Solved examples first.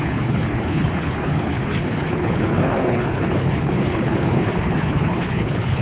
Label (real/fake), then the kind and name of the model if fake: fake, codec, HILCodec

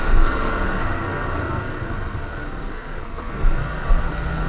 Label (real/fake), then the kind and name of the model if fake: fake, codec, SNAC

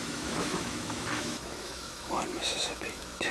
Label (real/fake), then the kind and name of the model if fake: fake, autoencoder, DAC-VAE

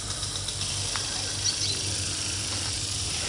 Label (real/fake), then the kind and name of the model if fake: real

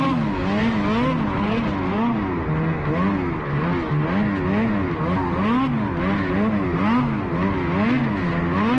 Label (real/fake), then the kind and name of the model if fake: real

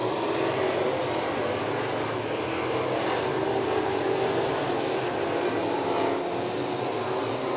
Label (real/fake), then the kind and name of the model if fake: real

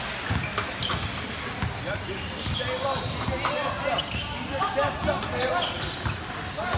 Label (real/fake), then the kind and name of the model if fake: real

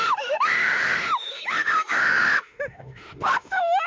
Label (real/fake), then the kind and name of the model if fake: fake, autoencoder, DAC-VAE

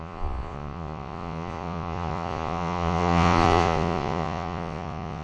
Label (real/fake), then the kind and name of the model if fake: fake, vocoder, Vocos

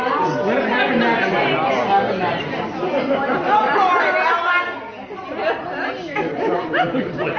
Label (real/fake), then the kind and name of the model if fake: real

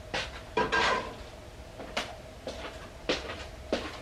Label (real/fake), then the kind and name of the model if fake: real